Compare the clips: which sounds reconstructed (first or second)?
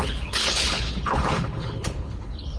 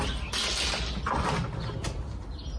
first